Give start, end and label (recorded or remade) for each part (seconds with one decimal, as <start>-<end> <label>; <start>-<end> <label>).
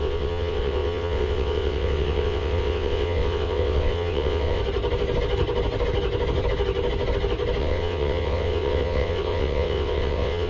0.0-4.6 remade; 4.6-7.6 recorded; 7.6-10.5 remade